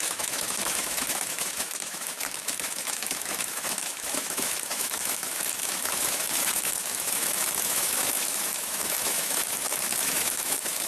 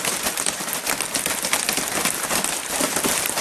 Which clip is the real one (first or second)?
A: second